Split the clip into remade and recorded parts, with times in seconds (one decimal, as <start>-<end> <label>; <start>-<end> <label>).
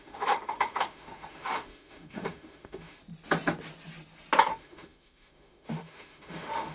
0.0-3.0 remade; 3.0-4.5 recorded; 4.5-6.7 remade